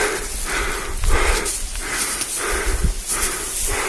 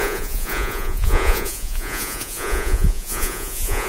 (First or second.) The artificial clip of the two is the second